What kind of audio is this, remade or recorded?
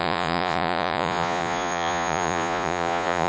remade